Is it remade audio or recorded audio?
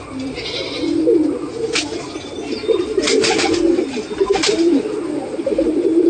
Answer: recorded